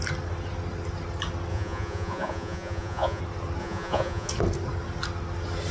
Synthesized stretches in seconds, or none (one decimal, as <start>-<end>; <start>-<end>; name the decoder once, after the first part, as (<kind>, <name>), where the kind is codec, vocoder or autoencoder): 1.5-3.2 (vocoder, Vocos); 3.6-4.3